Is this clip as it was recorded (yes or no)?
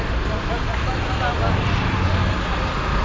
yes